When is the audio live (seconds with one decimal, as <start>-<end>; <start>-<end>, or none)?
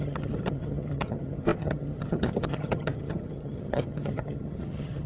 none